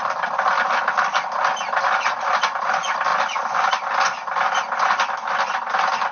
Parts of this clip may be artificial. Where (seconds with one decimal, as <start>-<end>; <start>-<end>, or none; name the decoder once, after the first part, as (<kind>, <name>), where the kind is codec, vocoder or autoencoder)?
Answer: none

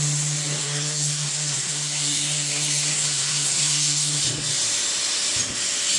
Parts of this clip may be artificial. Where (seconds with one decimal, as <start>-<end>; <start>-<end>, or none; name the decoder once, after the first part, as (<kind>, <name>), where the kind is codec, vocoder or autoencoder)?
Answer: 0.6-4.2 (codec, SNAC)

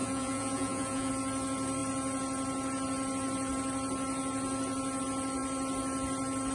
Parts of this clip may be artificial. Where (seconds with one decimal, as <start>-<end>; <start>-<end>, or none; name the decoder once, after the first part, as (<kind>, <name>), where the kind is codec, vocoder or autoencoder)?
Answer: 0.0-1.1 (vocoder, Vocos)

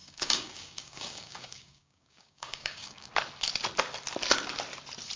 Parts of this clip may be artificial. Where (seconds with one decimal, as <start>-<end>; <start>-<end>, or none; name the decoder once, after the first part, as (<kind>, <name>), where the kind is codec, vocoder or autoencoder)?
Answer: 0.0-3.1 (codec, DAC)

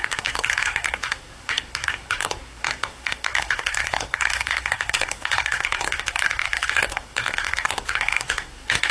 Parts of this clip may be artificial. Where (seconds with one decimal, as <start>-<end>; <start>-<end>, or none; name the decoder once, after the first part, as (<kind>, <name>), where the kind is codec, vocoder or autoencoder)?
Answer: 0.0-8.9 (codec, SNAC)

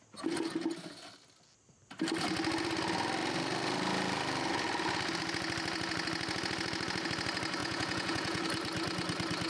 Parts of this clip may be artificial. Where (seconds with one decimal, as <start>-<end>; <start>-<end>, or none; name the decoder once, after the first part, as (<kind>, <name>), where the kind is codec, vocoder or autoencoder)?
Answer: 7.6-8.4 (vocoder, Vocos)

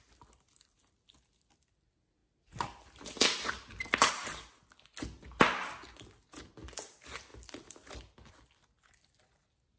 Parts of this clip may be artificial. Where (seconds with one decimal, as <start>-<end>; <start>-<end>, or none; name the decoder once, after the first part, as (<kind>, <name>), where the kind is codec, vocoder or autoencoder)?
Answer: none

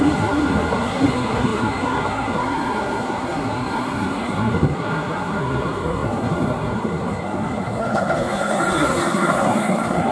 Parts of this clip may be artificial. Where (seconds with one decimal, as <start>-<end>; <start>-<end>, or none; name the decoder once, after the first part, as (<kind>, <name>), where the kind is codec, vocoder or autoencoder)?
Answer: 0.0-10.1 (codec, SNAC)